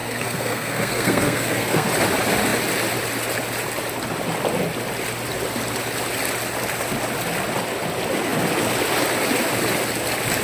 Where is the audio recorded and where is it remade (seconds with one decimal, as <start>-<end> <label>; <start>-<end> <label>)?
0.0-1.9 remade; 1.9-10.4 recorded